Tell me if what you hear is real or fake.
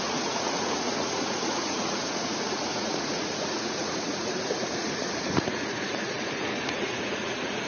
fake